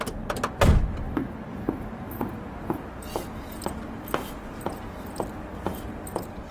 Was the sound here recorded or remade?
recorded